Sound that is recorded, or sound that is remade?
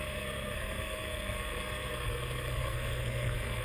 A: remade